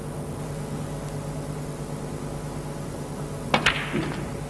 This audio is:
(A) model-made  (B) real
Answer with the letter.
B